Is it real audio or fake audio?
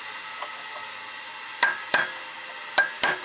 real